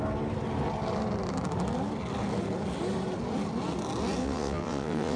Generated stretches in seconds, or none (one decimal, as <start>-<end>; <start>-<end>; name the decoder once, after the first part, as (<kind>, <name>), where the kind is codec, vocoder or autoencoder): 4.2-5.2 (vocoder, WaveNeXt)